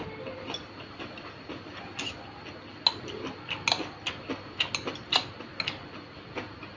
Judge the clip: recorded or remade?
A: recorded